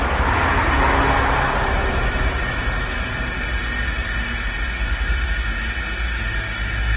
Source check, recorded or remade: recorded